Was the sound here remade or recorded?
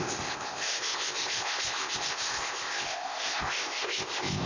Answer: remade